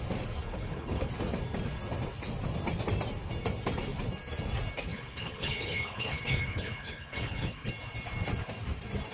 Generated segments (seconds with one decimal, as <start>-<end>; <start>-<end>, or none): 0.4-1.1; 4.9-7.7